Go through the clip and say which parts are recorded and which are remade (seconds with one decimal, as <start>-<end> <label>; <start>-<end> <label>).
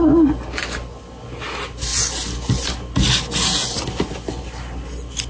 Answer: 0.0-5.3 recorded